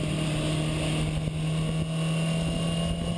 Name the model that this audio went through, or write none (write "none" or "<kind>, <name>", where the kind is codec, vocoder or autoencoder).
none